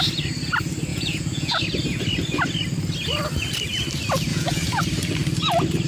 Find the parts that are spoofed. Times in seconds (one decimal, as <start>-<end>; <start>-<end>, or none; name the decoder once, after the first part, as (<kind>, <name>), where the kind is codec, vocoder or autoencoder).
0.9-1.6 (vocoder, Vocos); 4.3-4.8